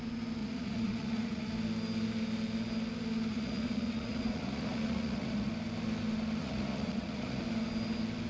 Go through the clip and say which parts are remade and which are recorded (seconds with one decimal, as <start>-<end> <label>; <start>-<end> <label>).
0.0-0.4 recorded; 0.4-1.5 remade; 1.5-3.3 recorded; 3.3-5.5 remade; 5.5-6.4 recorded; 6.4-7.4 remade; 7.4-8.3 recorded